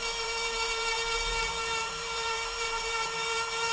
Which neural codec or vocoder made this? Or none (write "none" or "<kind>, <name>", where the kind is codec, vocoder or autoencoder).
vocoder, BigVGAN v2